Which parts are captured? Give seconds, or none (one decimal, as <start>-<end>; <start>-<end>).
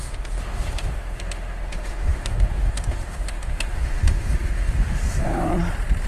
5.5-6.1